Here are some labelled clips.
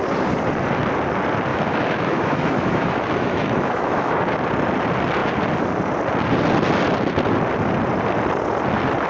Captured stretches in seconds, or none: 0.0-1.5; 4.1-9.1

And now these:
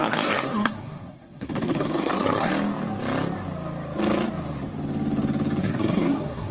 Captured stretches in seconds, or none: 2.5-5.6